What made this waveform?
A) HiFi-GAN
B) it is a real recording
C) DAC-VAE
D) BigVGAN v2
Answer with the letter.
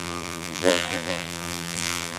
D